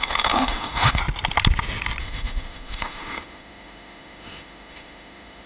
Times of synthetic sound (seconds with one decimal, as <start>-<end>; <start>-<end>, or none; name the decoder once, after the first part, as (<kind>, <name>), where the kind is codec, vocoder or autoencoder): 0.0-1.0 (autoencoder, DAC-VAE); 2.0-5.5